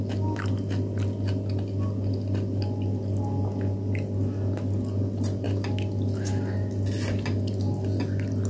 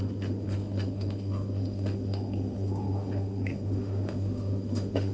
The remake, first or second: second